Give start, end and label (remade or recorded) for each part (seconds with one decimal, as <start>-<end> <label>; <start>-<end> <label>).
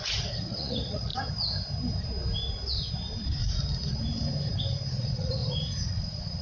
0.0-1.1 remade; 1.1-4.9 recorded; 4.9-5.4 remade; 5.4-5.9 recorded; 5.9-6.4 remade